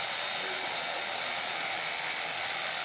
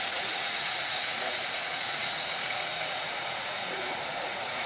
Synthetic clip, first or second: second